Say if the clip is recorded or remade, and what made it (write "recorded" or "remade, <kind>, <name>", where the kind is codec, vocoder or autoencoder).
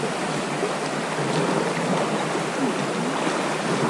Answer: recorded